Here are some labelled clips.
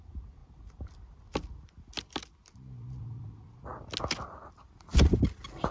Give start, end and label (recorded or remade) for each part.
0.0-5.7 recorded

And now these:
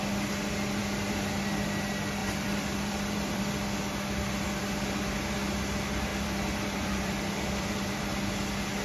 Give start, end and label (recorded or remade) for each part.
0.0-2.2 recorded; 2.2-3.4 remade; 3.4-6.1 recorded; 6.1-8.3 remade; 8.3-8.8 recorded